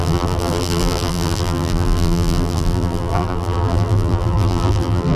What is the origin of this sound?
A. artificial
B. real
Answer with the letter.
A